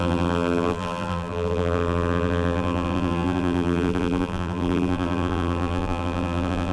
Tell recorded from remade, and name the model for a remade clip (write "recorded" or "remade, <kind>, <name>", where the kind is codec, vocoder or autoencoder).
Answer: remade, vocoder, BigVGAN v2